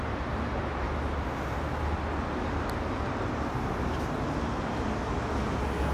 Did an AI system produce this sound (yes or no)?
no